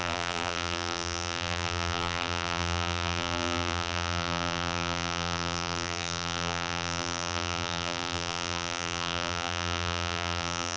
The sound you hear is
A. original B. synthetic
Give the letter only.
B